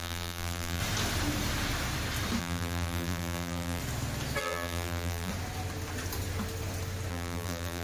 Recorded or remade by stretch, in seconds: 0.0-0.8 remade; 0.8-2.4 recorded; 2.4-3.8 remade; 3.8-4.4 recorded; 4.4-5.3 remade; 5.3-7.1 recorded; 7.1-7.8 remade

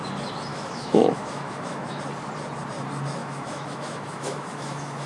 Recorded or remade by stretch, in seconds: 0.0-0.5 recorded; 0.5-2.0 remade; 2.0-3.2 recorded; 3.2-5.1 remade

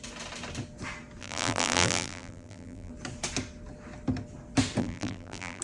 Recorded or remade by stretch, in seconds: 0.0-1.2 recorded; 1.2-2.9 remade; 2.9-4.8 recorded; 4.8-5.6 remade

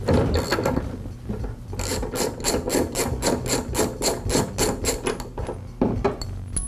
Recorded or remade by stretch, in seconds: 0.0-6.7 recorded

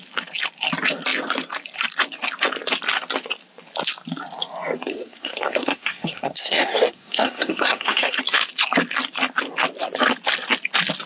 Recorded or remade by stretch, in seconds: 0.0-4.9 recorded; 4.9-8.2 remade; 8.2-11.1 recorded

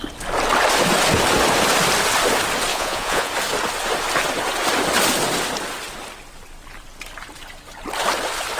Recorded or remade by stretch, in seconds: 0.0-2.7 recorded; 2.7-3.3 remade; 3.3-8.6 recorded